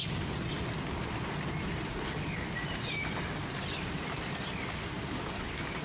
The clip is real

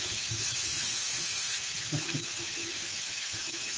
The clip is fake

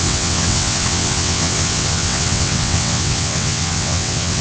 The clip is fake